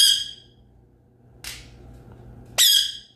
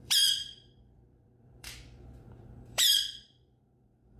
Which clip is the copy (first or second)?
second